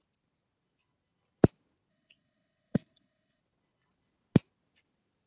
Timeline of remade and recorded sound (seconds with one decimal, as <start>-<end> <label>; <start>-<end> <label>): 0.0-1.9 recorded; 1.9-3.4 remade; 3.4-5.3 recorded